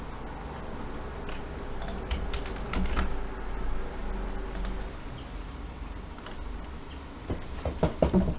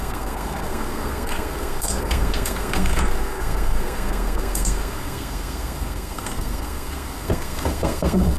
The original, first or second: first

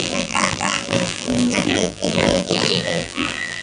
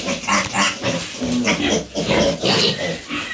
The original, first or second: second